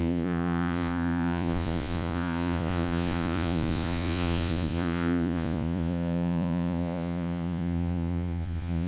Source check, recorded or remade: remade